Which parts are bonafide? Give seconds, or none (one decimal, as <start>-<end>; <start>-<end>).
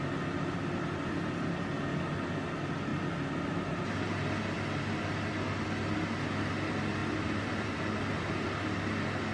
0.0-7.0; 8.3-9.3